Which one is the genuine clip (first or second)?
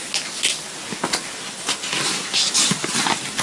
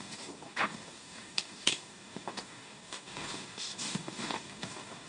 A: first